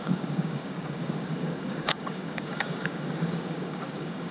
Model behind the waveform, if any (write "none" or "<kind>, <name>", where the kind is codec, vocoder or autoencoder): codec, DAC